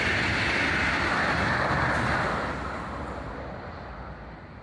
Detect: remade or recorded recorded